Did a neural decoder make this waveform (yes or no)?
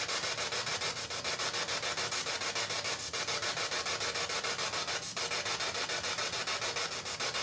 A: no